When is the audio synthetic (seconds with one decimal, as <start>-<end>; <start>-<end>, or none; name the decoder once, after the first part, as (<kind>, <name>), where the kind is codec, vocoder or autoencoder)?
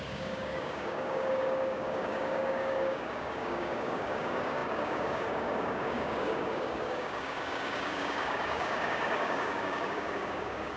0.0-10.8 (codec, DAC)